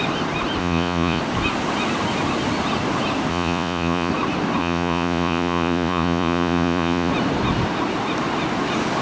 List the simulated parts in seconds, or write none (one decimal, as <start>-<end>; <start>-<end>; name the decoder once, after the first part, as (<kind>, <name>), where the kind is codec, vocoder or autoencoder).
0.6-1.2 (vocoder, Vocos); 3.3-4.1; 4.6-7.1

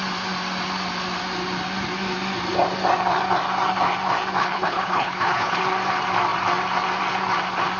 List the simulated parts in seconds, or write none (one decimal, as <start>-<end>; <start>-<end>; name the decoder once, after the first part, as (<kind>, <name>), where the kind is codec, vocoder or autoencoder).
4.4-5.6 (codec, HILCodec)

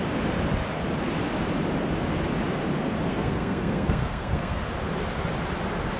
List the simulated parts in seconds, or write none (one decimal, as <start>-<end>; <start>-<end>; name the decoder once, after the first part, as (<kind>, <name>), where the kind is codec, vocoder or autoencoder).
3.1-4.6 (codec, SNAC)

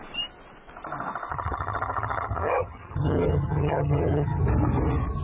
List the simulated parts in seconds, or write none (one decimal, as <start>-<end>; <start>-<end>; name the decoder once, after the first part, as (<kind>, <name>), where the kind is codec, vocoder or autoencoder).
1.3-4.4 (vocoder, HiFi-GAN)

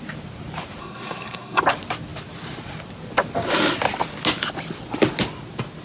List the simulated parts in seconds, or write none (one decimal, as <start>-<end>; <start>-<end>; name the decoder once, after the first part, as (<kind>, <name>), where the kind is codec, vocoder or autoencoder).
0.8-1.6 (codec, SNAC)

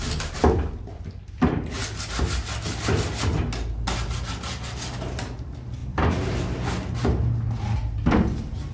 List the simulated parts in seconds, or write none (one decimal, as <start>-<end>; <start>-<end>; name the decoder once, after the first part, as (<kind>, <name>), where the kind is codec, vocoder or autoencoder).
none

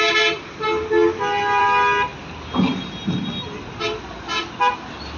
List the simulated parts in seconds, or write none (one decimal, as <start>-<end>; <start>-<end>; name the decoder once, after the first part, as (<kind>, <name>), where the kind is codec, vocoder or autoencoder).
none